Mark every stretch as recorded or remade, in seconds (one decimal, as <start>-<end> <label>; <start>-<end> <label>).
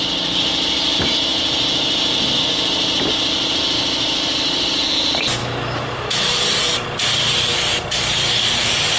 0.0-5.4 recorded; 5.4-6.3 remade; 6.3-9.0 recorded